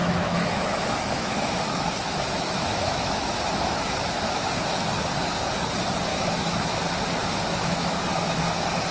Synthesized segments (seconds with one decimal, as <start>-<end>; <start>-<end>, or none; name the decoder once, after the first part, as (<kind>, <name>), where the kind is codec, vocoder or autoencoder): 0.0-4.5 (autoencoder, DAC-VAE); 6.1-6.8; 7.5-8.4